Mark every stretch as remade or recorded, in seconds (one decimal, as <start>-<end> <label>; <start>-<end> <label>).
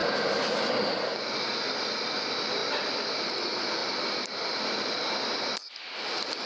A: 0.0-3.8 recorded; 3.8-5.7 remade; 5.7-6.5 recorded